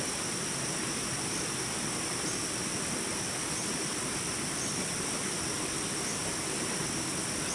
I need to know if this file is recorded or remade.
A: recorded